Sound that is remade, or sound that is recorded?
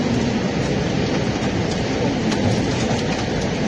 recorded